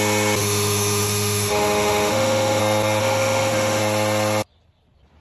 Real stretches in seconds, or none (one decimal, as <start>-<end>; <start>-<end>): 0.0-0.4; 2.6-3.0; 3.8-5.2